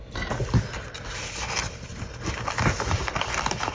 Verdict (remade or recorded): recorded